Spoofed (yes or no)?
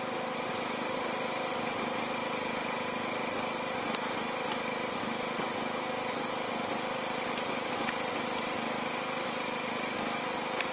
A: no